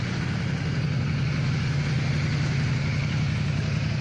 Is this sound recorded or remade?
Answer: recorded